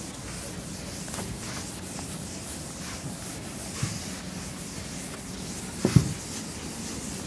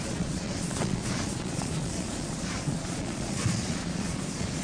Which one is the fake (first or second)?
second